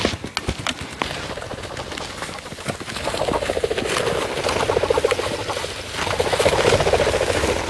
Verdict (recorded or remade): recorded